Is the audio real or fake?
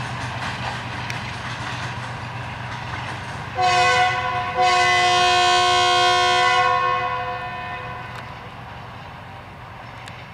real